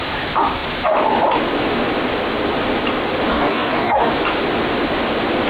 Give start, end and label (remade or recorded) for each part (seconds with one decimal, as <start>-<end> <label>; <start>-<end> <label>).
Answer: 0.0-3.3 recorded; 3.3-4.1 remade; 4.1-5.5 recorded